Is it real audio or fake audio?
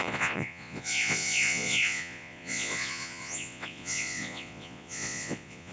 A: fake